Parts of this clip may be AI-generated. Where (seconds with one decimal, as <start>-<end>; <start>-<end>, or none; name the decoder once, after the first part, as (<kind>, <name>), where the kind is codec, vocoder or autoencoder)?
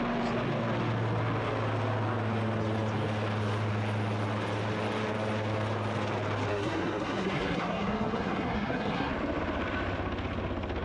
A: 6.5-9.1 (codec, SNAC)